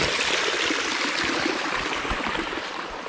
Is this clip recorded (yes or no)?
yes